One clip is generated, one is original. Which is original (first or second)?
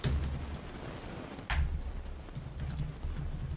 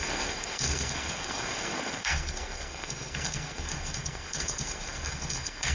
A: first